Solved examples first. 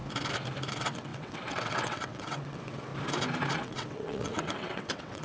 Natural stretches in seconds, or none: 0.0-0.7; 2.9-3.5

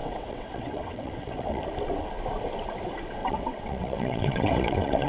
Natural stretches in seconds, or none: 1.6-3.2

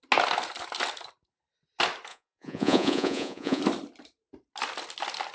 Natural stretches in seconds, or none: 0.0-2.1; 3.6-5.3

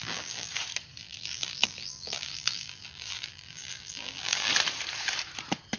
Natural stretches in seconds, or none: 0.5-1.0; 4.5-5.8

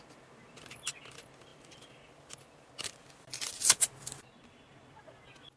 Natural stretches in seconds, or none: 0.0-5.6

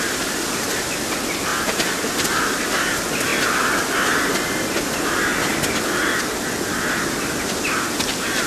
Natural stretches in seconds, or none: 0.0-1.5; 2.0-8.5

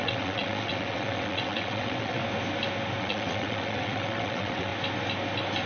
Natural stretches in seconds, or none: 2.2-3.0; 4.7-5.7

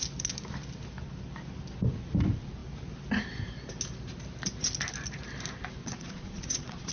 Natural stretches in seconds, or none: 0.0-5.8